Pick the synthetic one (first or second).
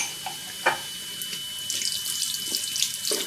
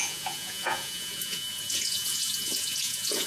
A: second